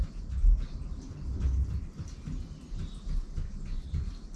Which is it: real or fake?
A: real